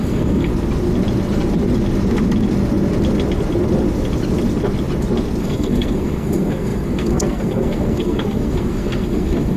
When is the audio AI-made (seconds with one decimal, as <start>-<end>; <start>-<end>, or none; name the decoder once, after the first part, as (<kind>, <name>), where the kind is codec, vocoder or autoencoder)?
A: 0.0-0.5 (codec, SNAC); 5.4-9.6